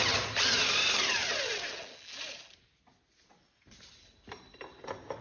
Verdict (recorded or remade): recorded